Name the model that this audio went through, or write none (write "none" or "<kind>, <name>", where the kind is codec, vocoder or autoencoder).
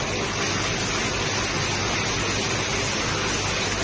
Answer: none